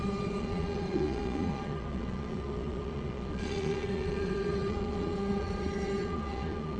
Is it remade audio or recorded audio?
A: remade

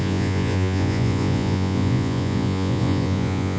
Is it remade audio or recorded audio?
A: remade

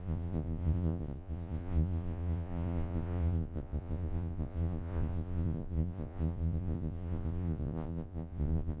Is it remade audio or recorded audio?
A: remade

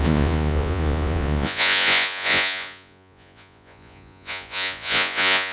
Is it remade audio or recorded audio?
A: remade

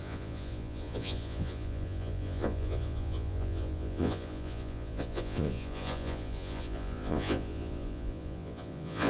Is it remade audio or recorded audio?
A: remade